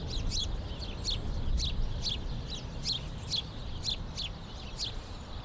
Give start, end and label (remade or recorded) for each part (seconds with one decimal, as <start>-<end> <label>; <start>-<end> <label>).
0.0-5.4 recorded